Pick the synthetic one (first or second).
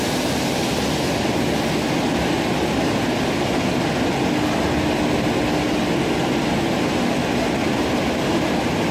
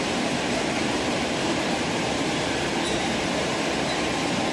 second